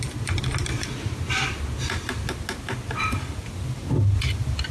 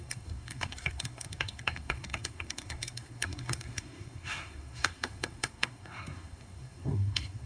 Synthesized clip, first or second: second